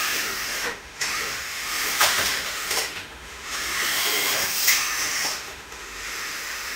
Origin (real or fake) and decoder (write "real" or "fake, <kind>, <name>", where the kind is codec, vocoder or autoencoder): fake, autoencoder, DAC-VAE